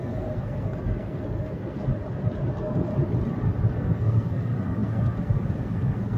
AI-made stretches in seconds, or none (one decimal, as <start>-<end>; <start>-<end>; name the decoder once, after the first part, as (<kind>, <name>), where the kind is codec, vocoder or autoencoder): 0.0-1.9 (codec, SNAC); 2.5-2.9; 3.7-6.2